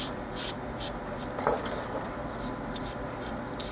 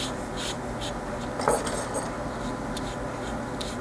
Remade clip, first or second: first